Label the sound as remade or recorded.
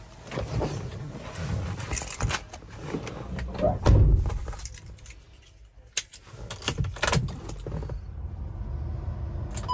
recorded